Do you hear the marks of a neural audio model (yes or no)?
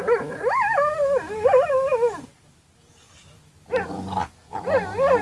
no